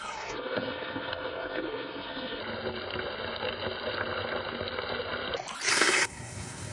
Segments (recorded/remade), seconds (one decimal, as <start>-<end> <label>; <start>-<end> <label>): 0.0-2.4 remade; 2.4-5.7 recorded; 5.7-6.7 remade